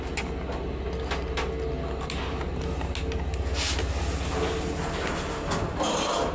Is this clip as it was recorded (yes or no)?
yes